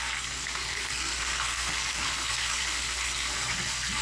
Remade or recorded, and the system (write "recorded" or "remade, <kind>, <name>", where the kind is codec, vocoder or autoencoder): remade, codec, SNAC